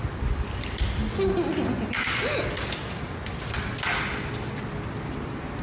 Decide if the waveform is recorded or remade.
recorded